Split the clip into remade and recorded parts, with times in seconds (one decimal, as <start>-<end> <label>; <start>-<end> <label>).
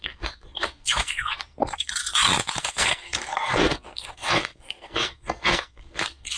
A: 0.0-2.0 remade; 2.0-2.5 recorded; 2.5-6.4 remade